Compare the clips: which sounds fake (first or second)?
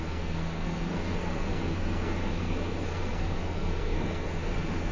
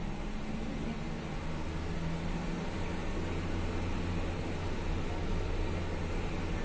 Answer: first